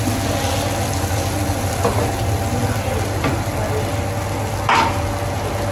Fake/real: real